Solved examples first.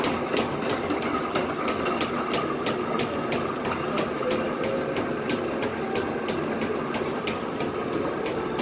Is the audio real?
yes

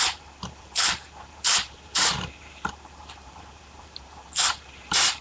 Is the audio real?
no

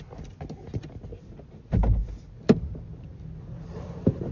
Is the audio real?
yes